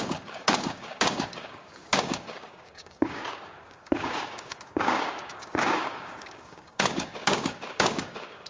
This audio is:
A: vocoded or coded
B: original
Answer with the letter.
A